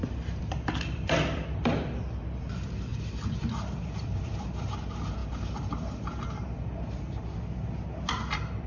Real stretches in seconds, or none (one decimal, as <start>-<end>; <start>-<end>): 4.7-5.2; 6.0-8.7